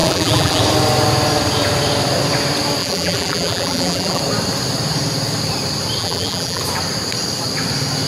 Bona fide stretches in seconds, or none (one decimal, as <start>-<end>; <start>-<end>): 0.6-2.8; 4.2-6.0; 6.6-8.1